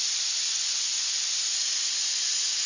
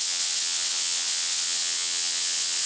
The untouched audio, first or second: first